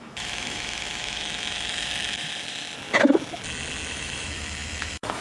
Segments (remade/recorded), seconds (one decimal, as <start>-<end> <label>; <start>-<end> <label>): 0.0-2.2 remade; 2.2-3.9 recorded; 3.9-5.2 remade